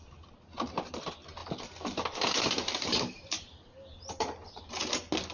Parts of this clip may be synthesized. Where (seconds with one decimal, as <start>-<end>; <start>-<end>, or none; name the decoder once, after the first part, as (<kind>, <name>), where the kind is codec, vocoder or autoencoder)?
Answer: 1.4-4.6 (vocoder, BigVGAN v2)